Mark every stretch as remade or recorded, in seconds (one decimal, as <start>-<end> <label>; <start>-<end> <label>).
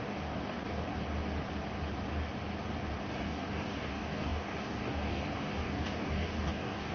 0.0-0.9 remade; 0.9-3.2 recorded; 3.2-6.9 remade